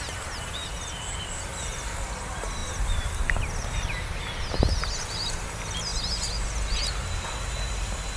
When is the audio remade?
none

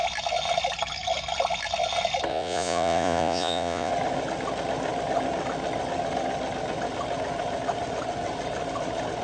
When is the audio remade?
2.3-3.9 (vocoder, Vocos)

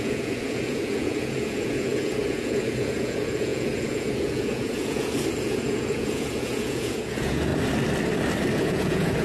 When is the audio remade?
0.0-7.5 (vocoder, Vocos); 8.5-9.2